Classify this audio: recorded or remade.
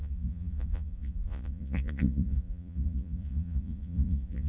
remade